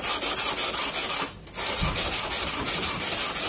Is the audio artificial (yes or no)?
no